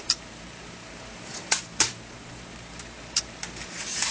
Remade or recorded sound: remade